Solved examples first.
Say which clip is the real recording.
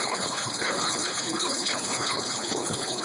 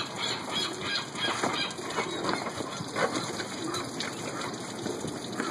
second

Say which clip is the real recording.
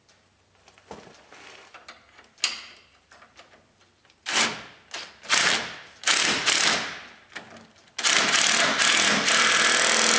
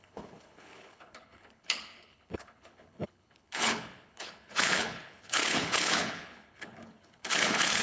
first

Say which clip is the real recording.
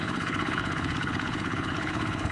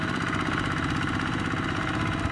second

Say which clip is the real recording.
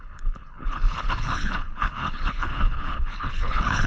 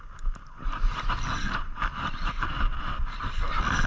second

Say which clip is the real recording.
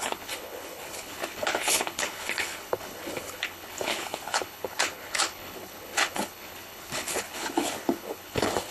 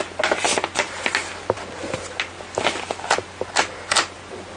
second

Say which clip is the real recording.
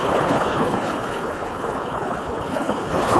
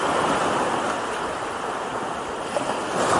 second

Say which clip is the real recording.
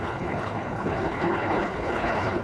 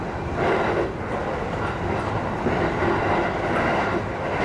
second